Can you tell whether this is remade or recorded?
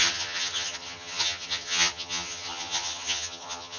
remade